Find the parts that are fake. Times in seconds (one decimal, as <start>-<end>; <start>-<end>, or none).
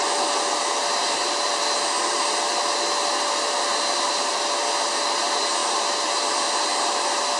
none